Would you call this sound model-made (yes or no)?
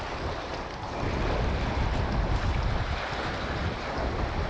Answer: no